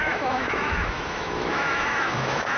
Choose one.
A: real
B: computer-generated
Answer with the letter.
B